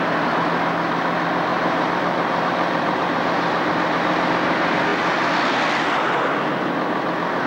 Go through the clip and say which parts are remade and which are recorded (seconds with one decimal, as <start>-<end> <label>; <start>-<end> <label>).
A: 0.0-1.5 recorded; 1.5-3.7 remade; 3.7-7.5 recorded